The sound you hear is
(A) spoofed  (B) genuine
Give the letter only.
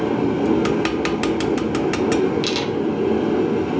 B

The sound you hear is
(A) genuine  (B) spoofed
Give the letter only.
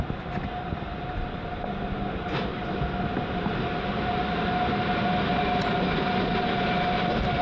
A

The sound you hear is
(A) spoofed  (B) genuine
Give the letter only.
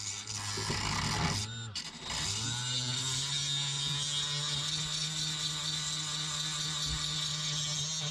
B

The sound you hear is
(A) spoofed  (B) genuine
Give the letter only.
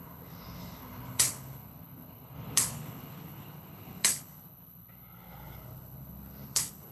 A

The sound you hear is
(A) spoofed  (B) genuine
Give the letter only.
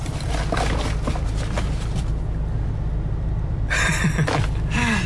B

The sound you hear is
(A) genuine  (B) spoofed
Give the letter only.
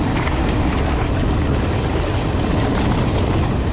A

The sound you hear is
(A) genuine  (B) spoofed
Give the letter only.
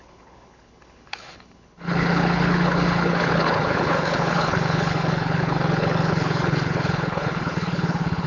B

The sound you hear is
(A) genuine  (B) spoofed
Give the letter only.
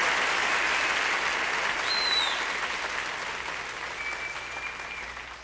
A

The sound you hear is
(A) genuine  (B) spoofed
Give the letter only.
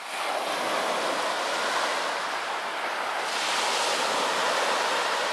A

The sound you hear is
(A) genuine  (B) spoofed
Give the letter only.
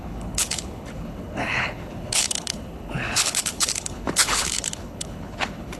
B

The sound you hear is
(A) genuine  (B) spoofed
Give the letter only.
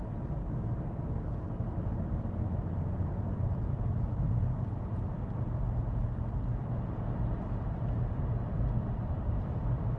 A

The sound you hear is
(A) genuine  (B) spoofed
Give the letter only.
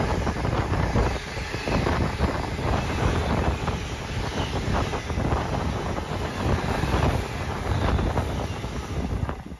A